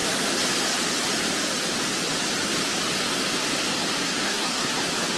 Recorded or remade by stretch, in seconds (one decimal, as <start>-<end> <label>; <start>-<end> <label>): 0.0-4.0 recorded; 4.0-4.7 remade; 4.7-5.2 recorded